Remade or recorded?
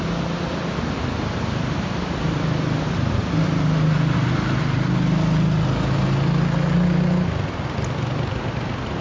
recorded